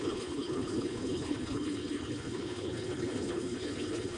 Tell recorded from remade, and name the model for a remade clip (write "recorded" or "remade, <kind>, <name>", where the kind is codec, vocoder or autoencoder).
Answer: remade, codec, HILCodec